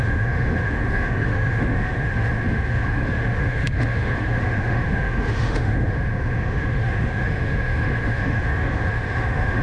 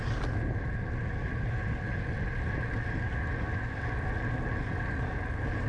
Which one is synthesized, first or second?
first